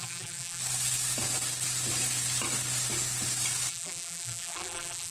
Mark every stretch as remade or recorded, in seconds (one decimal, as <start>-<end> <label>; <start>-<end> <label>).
0.0-0.6 remade; 0.6-3.7 recorded; 3.7-5.1 remade